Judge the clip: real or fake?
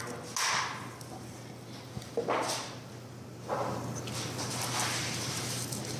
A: real